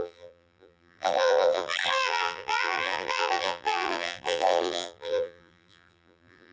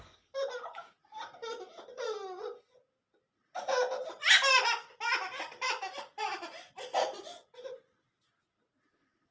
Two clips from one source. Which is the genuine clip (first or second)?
second